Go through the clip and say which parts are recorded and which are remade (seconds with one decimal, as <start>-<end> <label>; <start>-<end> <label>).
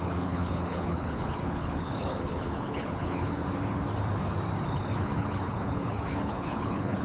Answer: 0.0-3.4 remade; 3.4-4.7 recorded; 4.7-7.0 remade